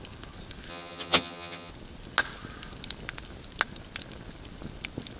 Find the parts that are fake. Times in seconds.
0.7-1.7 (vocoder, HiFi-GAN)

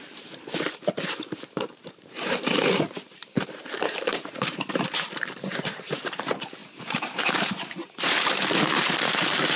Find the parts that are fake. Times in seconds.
0.0-9.6 (vocoder, BigVGAN v2)